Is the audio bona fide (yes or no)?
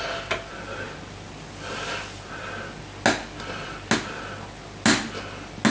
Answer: yes